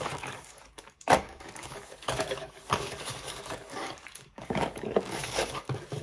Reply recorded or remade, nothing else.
remade